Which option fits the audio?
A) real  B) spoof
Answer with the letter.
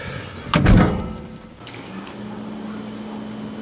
A